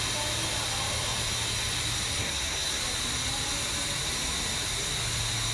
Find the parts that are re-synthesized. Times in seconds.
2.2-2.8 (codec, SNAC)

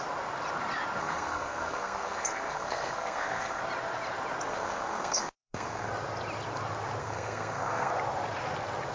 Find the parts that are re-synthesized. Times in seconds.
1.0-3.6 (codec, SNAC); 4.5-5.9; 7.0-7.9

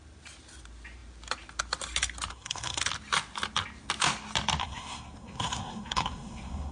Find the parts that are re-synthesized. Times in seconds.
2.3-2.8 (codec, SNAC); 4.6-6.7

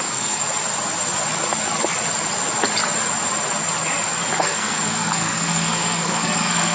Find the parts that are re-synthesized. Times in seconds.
0.0-0.4 (codec, SNAC); 4.4-6.7